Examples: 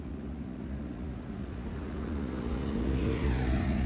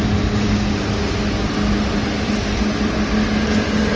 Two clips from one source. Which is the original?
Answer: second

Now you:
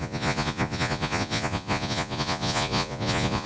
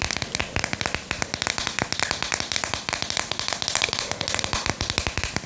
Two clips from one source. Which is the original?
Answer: second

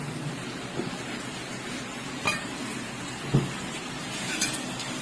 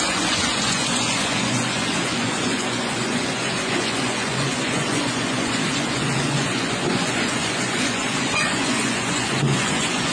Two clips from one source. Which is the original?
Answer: first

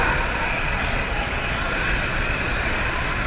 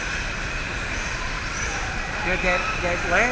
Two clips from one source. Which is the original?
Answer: second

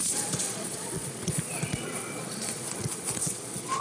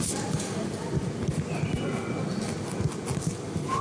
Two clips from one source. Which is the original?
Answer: second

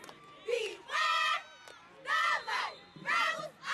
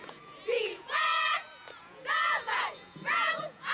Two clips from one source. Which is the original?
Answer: first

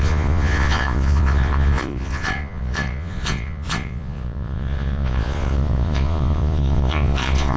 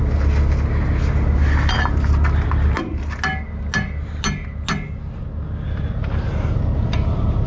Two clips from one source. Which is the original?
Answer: second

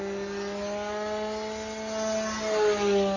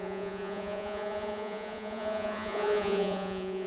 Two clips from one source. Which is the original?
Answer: first